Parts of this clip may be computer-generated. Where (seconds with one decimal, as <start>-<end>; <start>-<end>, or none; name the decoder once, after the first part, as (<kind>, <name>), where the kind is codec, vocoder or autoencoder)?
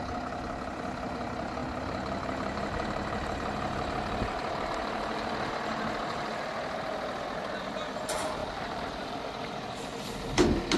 1.6-5.5 (vocoder, BigVGAN v2); 8.4-9.2